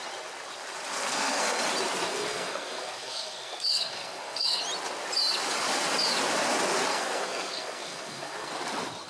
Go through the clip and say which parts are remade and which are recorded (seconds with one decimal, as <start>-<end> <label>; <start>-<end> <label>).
0.0-1.0 recorded; 1.0-1.6 remade; 1.6-2.1 recorded; 2.1-4.6 remade; 4.6-6.9 recorded; 6.9-8.5 remade; 8.5-9.1 recorded